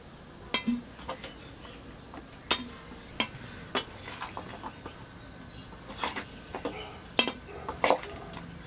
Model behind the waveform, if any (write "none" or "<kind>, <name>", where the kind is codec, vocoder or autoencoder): none